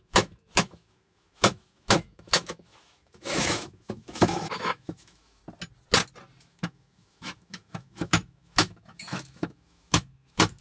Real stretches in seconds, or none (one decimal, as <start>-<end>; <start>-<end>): 5.4-6.4